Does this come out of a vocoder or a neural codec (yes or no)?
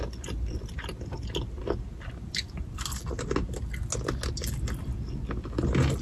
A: no